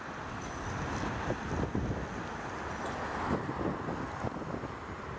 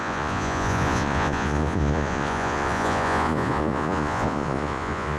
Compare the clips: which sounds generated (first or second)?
second